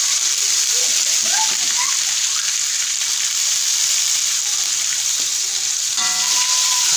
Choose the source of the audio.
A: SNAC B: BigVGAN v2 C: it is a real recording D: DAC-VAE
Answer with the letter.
B